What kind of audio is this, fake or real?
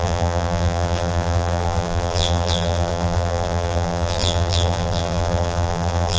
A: fake